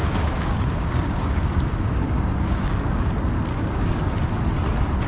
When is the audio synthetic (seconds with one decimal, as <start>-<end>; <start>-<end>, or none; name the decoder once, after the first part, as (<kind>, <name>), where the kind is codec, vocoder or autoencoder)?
0.0-3.1 (codec, DAC); 3.5-4.0